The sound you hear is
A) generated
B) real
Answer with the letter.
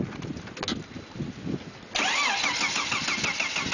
B